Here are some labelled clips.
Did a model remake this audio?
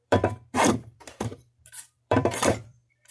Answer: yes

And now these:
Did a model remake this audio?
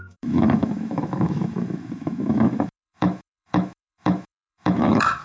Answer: yes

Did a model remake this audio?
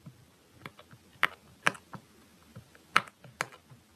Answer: no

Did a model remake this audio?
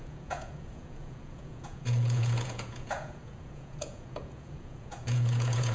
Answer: yes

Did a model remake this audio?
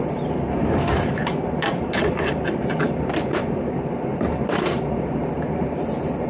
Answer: yes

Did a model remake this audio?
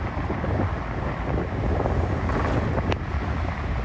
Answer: no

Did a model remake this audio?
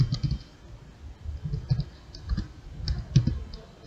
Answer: no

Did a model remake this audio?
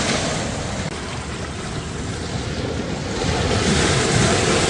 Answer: no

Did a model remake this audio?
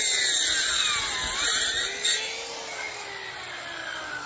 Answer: no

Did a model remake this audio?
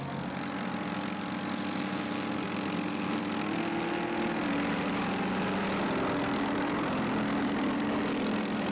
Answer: no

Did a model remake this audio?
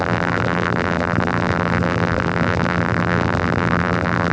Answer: yes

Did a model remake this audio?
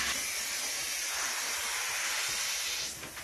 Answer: no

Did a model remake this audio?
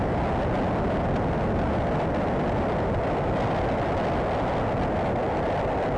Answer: no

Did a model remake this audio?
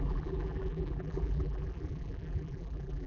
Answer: yes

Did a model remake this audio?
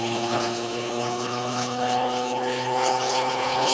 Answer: yes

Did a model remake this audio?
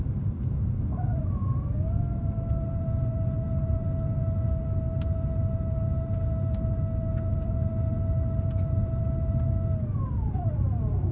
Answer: no